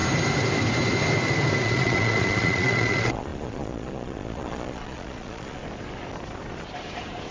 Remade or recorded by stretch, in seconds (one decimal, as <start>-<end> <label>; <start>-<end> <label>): 0.0-1.6 recorded; 1.6-5.6 remade; 5.6-7.3 recorded